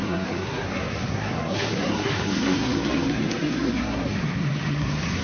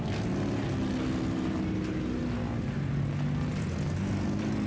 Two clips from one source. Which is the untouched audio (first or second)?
second